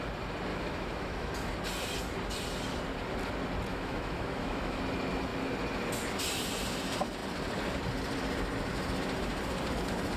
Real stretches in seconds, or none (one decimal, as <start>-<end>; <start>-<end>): 0.0-0.5; 1.3-3.7; 4.8-10.2